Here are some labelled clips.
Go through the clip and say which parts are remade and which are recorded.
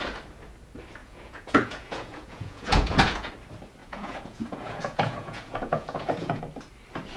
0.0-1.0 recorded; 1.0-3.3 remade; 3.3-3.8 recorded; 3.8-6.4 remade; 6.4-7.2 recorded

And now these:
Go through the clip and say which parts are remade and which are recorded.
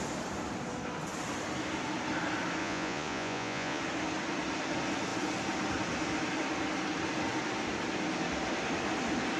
0.0-2.6 recorded; 2.6-3.8 remade; 3.8-9.4 recorded